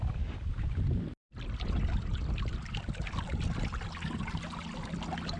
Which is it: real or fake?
real